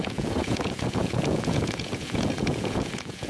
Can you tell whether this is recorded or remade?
remade